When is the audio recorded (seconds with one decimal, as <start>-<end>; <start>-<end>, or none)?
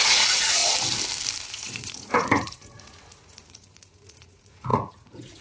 0.6-1.5